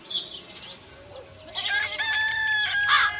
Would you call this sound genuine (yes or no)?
yes